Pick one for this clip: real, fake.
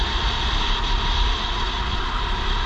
real